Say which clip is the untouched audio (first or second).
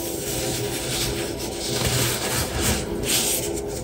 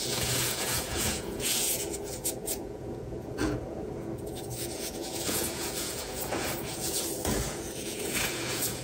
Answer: first